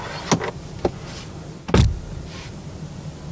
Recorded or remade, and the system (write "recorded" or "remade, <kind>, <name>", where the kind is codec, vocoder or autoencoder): recorded